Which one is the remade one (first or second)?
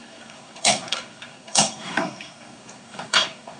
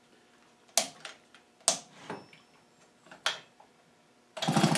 first